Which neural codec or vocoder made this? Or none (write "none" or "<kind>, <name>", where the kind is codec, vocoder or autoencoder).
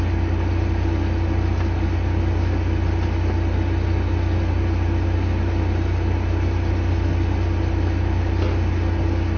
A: none